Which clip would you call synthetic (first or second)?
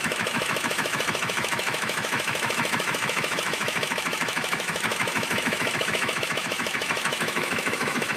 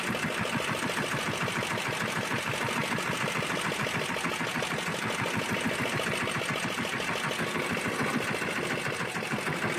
first